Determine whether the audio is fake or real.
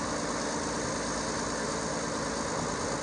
real